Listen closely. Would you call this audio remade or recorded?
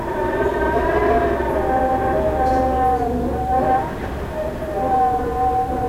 recorded